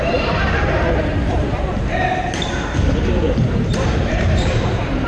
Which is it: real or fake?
fake